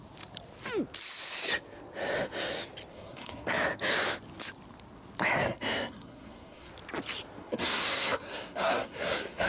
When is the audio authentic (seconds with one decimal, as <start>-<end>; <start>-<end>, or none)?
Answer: 0.0-2.9; 3.5-5.4; 6.7-7.4